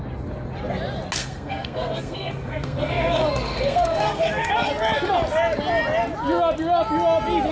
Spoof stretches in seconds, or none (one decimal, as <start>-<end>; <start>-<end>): 1.2-4.7